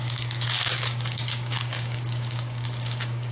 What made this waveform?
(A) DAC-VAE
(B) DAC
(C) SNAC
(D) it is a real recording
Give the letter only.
B